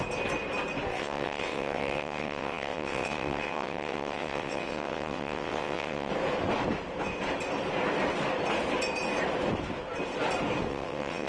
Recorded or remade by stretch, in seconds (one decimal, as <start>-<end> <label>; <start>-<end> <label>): 0.0-0.9 recorded; 0.9-6.1 remade; 6.1-10.7 recorded; 10.7-11.3 remade